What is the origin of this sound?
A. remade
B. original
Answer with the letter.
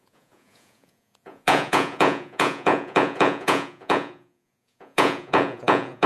A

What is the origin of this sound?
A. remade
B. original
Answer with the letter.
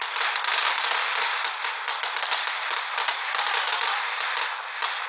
B